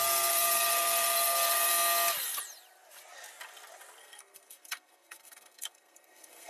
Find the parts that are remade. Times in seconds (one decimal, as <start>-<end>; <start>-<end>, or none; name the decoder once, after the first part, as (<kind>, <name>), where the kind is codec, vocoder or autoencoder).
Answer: 0.0-1.7 (codec, SNAC); 4.0-6.5